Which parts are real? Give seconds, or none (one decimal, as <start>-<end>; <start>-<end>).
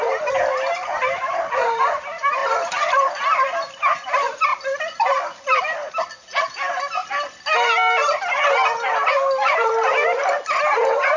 4.5-6.4; 7.0-9.5